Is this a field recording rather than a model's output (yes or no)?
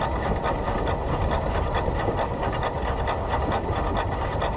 yes